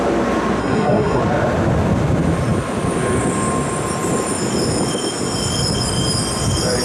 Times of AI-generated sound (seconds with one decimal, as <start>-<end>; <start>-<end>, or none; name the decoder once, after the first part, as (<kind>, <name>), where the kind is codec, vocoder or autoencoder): 0.6-1.2 (codec, SNAC)